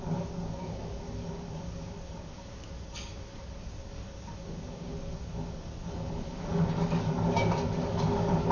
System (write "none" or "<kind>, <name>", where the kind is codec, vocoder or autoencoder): codec, DAC